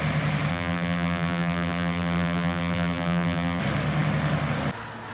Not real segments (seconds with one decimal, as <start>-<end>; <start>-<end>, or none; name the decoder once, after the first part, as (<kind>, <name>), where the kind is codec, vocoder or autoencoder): 0.5-3.6 (vocoder, BigVGAN v2)